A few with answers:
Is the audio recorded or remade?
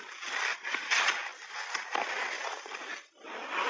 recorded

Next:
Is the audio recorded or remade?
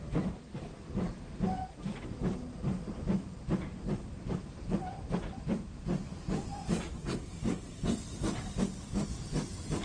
recorded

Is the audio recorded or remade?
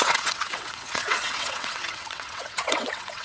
remade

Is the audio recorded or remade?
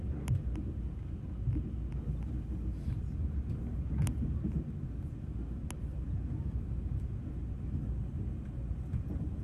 recorded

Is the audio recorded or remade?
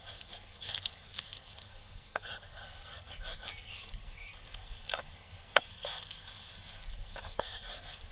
remade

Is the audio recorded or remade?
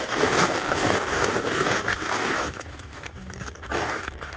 remade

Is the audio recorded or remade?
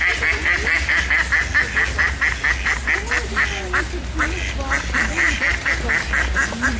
recorded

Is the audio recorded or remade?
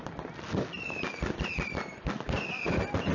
recorded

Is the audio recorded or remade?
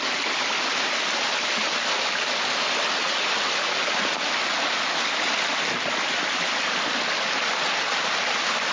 recorded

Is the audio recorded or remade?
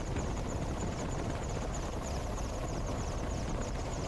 recorded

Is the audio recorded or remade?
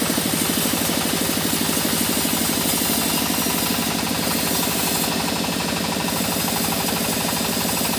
recorded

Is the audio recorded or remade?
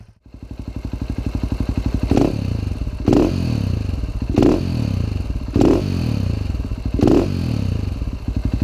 recorded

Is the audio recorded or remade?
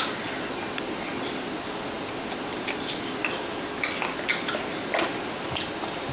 recorded